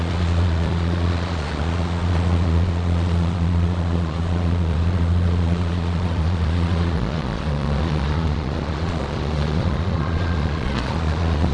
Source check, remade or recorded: remade